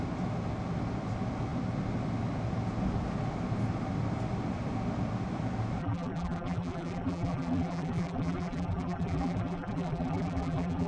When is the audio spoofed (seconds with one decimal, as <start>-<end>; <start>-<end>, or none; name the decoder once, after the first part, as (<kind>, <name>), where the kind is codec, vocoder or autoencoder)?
5.8-10.9 (vocoder, BigVGAN v2)